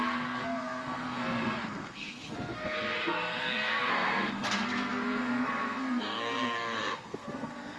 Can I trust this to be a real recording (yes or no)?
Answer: no